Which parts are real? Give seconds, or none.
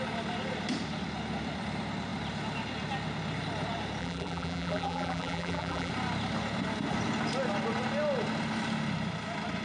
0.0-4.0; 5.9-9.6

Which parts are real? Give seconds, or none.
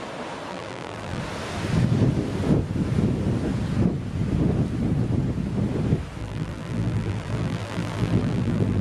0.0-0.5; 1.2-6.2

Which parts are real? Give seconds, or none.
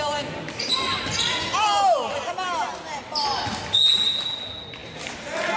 0.0-5.6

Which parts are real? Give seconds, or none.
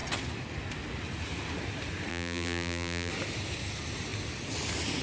0.0-2.1; 3.1-5.0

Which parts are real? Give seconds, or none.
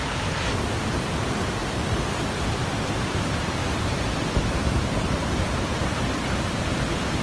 1.6-2.6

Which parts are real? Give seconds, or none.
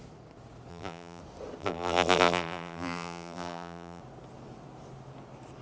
0.0-0.7; 1.2-1.6; 4.0-5.6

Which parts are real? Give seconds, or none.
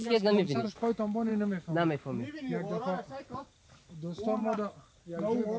0.7-5.6